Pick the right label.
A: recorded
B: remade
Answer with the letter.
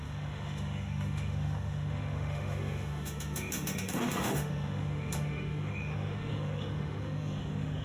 B